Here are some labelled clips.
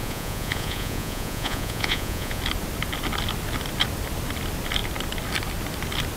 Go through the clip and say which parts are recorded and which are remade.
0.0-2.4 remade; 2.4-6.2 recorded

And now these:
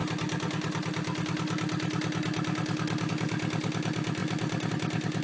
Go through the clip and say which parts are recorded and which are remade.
0.0-5.2 recorded

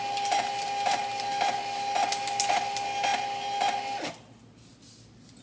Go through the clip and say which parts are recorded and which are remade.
0.0-5.4 recorded